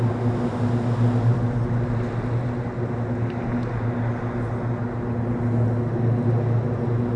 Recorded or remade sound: recorded